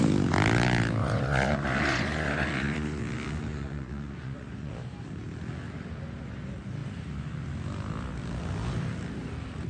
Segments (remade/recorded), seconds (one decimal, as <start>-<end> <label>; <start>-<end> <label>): 0.0-1.0 recorded; 1.0-3.0 remade; 3.0-3.5 recorded; 3.5-4.7 remade; 4.7-9.7 recorded